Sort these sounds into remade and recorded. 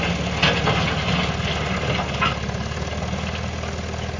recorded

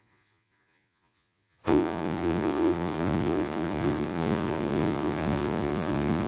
remade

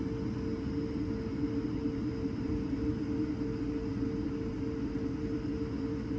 recorded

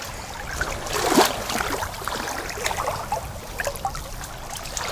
recorded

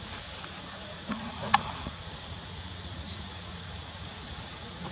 remade